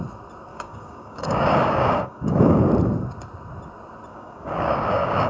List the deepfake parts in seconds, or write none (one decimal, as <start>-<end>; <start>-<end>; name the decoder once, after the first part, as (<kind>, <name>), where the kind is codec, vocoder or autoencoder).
0.5-2.6 (codec, DAC); 4.1-5.3